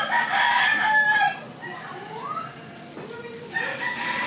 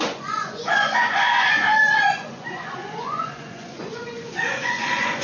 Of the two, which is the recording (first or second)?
first